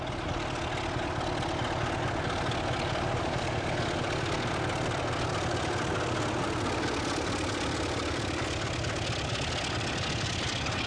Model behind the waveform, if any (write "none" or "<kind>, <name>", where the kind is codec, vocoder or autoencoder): none